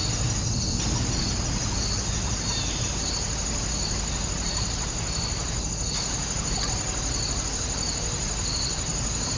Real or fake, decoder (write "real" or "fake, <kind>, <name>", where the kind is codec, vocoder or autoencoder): real